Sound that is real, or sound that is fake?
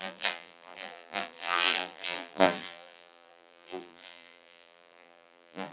fake